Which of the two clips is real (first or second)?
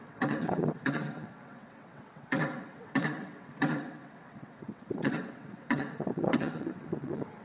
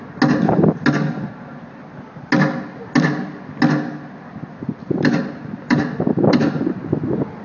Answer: second